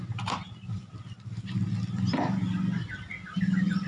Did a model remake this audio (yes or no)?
no